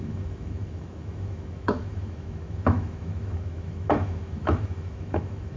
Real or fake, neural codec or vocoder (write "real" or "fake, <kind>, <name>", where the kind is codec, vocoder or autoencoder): fake, autoencoder, DAC-VAE